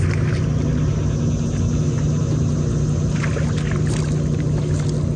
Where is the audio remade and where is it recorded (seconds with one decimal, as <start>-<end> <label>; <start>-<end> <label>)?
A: 0.0-5.2 recorded